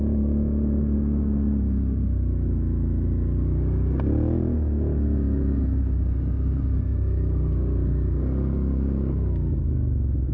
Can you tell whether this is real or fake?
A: real